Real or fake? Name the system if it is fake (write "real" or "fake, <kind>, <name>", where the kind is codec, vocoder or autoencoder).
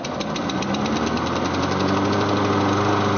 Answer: real